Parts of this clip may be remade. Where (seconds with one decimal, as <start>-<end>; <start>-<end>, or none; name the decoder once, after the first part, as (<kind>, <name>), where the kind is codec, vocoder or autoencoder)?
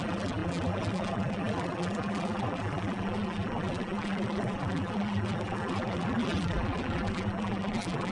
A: 0.0-8.1 (vocoder, BigVGAN v2)